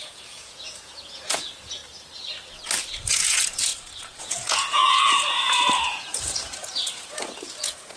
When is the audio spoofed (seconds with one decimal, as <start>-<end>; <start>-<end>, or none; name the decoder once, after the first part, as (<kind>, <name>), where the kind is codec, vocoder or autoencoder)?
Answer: 0.0-1.8 (vocoder, Vocos); 3.1-8.0